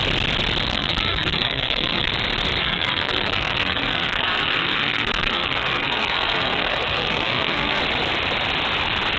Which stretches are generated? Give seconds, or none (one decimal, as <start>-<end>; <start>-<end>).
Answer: 0.7-2.1; 2.6-7.8